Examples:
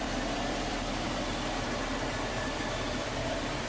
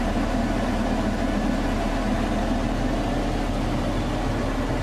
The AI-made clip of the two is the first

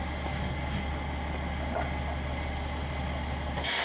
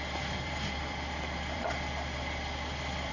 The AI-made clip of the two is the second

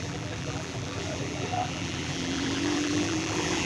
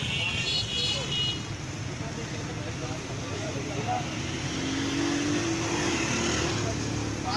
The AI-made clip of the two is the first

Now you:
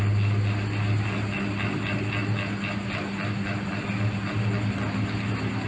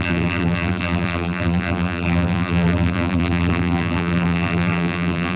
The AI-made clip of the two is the second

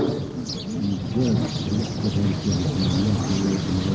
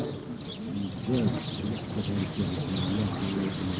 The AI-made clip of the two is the first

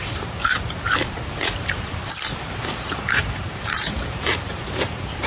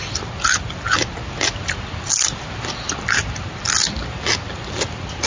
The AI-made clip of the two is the first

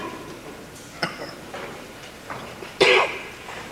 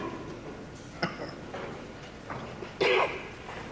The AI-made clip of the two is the first